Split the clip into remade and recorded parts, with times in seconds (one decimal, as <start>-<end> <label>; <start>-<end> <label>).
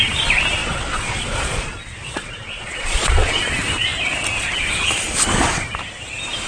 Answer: 0.0-0.6 recorded; 0.6-3.4 remade; 3.4-6.5 recorded